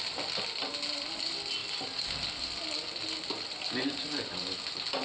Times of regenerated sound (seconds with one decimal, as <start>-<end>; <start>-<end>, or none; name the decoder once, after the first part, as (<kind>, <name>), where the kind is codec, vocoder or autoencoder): none